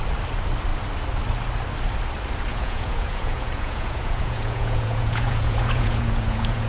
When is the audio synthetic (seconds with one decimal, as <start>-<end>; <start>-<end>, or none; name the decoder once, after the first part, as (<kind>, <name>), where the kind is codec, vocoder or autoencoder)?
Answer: 2.5-6.7 (vocoder, Vocos)